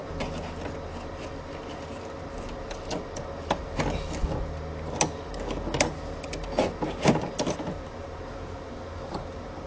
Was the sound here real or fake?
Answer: real